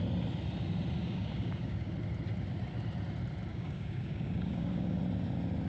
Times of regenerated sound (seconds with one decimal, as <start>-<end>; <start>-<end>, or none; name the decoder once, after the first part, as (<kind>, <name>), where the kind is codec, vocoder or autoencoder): 1.0-1.9 (codec, DAC); 3.5-5.0

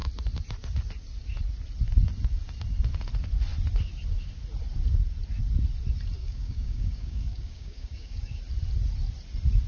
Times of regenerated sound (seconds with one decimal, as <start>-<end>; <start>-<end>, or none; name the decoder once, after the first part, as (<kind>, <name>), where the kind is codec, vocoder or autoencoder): 6.2-8.4 (codec, DAC)

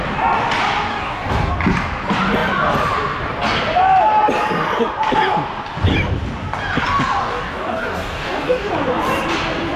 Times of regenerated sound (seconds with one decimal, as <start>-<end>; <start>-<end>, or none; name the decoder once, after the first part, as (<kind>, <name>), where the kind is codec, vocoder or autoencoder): 0.9-1.5 (codec, DAC); 7.2-8.7

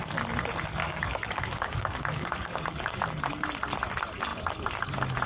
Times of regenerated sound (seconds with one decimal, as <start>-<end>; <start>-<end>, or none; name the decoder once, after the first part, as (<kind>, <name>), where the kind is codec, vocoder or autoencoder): 0.8-3.0 (codec, DAC)

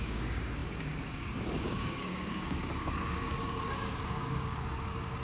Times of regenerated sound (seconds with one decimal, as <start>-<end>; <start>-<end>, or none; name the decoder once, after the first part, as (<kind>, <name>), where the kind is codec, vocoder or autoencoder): 0.0-5.2 (codec, DAC)

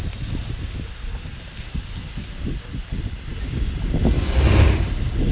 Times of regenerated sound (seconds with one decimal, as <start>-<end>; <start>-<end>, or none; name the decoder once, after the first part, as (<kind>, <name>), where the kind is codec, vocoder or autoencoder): none

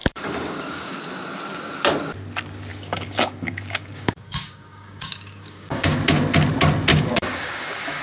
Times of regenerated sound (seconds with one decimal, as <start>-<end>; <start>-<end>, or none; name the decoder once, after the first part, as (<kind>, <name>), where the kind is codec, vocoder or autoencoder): 0.0-1.0 (codec, DAC); 2.7-6.0; 6.9-8.0

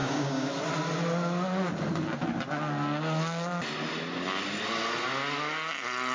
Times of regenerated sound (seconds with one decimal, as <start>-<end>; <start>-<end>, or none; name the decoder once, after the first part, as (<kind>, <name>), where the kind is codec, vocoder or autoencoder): 0.0-0.5 (codec, DAC)